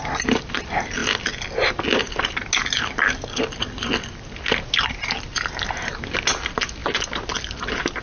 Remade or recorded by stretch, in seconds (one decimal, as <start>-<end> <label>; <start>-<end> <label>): 0.0-8.0 recorded